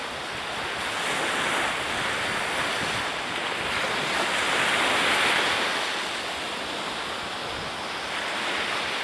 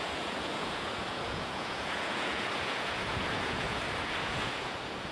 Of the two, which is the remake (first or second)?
second